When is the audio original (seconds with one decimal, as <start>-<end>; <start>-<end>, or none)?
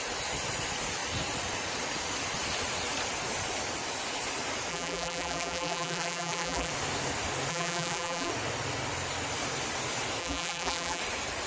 0.0-4.7; 6.7-7.5; 8.3-10.2; 11.0-11.5